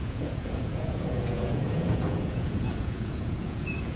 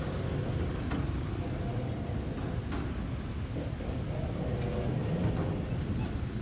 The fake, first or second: first